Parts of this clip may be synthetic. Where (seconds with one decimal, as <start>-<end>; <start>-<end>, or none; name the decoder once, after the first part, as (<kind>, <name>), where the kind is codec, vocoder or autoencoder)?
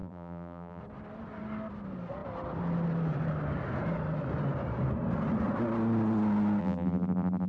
0.0-0.8 (vocoder, BigVGAN v2); 6.6-7.5